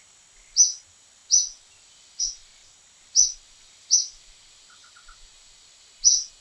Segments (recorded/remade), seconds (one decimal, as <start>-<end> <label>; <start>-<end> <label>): 0.0-6.4 recorded